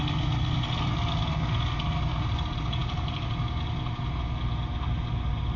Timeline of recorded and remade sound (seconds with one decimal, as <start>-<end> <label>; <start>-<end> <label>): 0.0-5.6 recorded

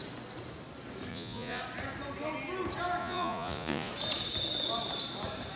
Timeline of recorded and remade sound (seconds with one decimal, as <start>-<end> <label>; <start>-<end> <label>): 0.0-1.1 recorded; 1.1-1.6 remade; 1.6-3.0 recorded; 3.0-3.9 remade; 3.9-5.6 recorded

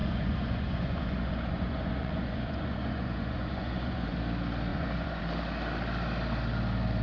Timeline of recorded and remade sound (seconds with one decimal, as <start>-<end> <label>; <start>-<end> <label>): 0.0-4.2 remade; 4.2-4.7 recorded; 4.7-5.2 remade; 5.2-7.0 recorded

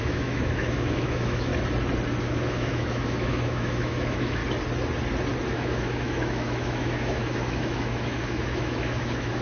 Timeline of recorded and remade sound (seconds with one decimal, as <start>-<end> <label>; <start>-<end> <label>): 0.0-1.5 remade; 1.5-2.2 recorded; 2.2-4.4 remade; 4.4-5.5 recorded; 5.5-9.4 remade

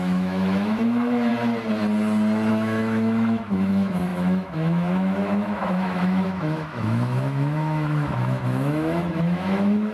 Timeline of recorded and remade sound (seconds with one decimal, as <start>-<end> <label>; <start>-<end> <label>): 0.0-1.3 remade; 1.3-2.5 recorded; 2.5-9.9 remade

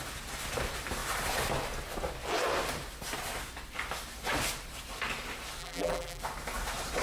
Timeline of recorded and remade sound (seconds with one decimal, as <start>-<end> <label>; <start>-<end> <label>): 0.0-5.6 recorded; 5.6-6.2 remade; 6.2-7.0 recorded